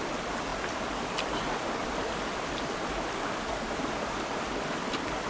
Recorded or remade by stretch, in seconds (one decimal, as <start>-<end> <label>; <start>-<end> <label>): 0.0-5.3 recorded